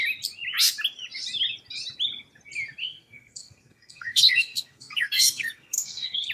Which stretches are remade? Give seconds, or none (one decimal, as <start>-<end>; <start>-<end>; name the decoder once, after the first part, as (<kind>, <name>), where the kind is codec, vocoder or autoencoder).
2.8-6.3 (codec, SNAC)